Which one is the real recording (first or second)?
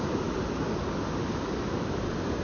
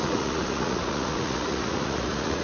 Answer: first